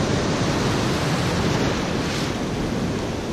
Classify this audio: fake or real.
real